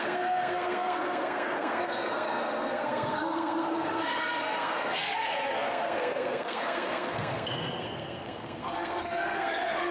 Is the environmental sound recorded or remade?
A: remade